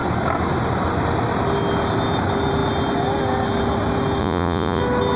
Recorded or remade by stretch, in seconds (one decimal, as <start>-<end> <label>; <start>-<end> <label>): 0.0-4.2 recorded; 4.2-4.8 remade; 4.8-5.2 recorded